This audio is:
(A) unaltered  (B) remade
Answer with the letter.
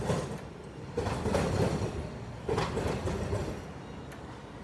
A